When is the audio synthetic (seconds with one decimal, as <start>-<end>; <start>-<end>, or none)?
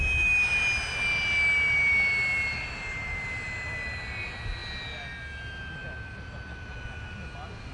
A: none